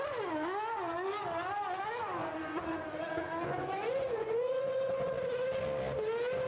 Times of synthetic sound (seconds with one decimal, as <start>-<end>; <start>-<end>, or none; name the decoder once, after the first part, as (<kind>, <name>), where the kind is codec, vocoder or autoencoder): 2.2-5.1 (vocoder, Vocos)